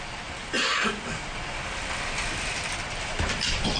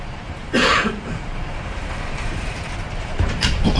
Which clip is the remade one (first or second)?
second